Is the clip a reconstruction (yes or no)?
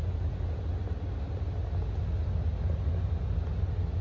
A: no